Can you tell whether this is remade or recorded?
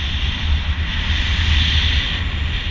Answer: recorded